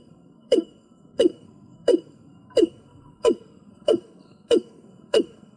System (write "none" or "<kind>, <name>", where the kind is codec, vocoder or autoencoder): codec, SNAC